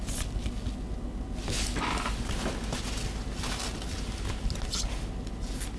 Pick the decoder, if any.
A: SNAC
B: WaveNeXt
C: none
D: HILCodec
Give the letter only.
C